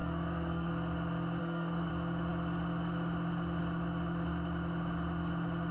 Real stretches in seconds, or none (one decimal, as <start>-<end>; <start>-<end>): 0.7-1.4; 1.9-5.7